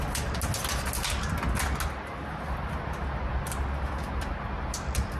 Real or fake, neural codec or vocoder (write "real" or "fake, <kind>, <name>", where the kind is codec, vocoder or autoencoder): real